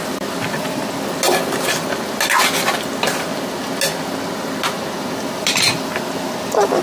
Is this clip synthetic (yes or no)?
no